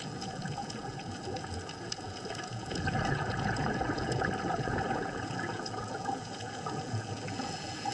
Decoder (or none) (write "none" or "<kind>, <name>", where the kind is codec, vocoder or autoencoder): vocoder, Vocos